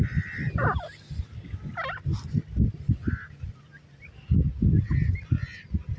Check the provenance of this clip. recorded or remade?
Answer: recorded